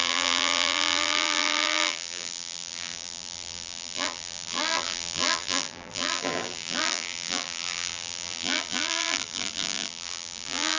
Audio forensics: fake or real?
fake